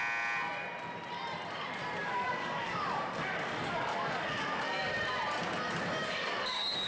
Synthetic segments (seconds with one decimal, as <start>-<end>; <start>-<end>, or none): 2.0-4.8; 6.0-6.9